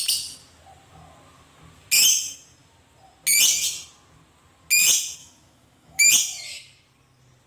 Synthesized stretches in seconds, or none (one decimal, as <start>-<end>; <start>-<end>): 5.2-6.1